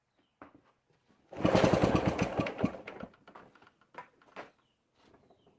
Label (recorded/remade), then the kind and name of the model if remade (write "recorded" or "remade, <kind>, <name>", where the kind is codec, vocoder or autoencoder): recorded